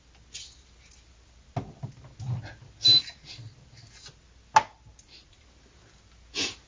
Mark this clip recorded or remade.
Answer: recorded